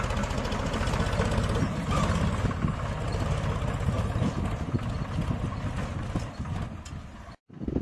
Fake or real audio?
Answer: real